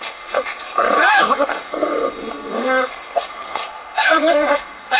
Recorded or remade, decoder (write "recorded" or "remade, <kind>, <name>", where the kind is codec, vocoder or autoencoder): remade, codec, SNAC